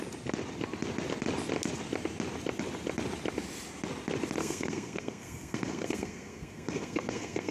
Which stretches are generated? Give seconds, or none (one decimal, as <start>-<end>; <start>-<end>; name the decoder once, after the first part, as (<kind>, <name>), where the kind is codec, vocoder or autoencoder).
4.4-7.5 (codec, SNAC)